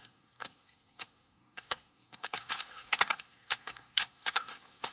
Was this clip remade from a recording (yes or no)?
yes